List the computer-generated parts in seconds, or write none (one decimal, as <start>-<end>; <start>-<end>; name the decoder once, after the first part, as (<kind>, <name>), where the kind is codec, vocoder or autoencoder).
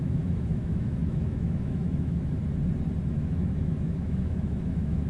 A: 0.0-2.4 (autoencoder, DAC-VAE); 3.1-5.1